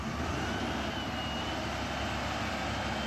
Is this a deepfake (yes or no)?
no